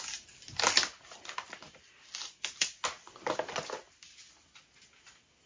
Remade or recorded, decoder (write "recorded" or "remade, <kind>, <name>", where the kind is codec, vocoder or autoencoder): recorded